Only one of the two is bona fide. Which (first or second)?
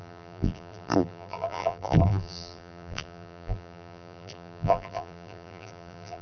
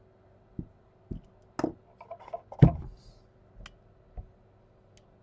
second